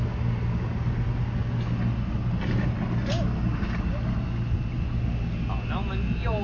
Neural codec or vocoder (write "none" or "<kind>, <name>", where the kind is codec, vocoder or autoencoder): none